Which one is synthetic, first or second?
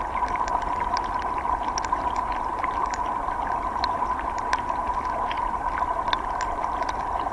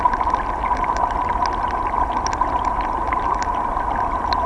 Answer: first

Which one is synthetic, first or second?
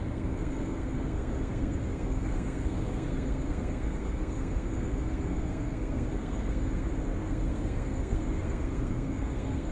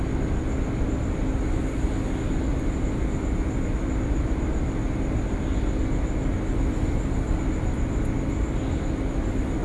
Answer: first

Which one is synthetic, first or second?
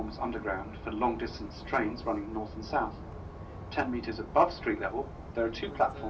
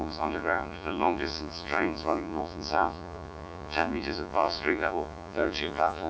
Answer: second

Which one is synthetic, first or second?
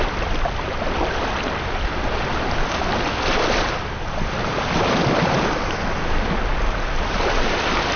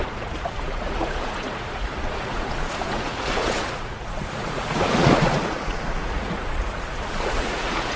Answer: second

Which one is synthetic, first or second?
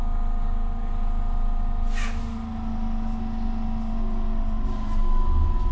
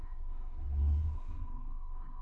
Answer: second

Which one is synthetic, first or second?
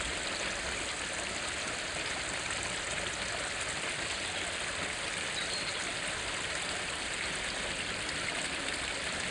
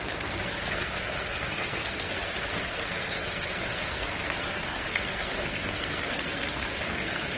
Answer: second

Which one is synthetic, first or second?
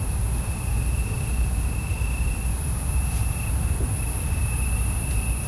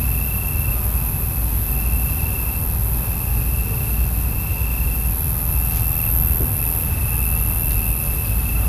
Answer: first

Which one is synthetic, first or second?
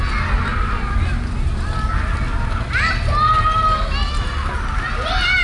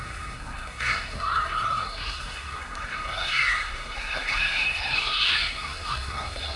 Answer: second